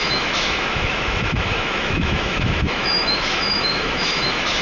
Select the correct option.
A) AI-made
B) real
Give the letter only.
A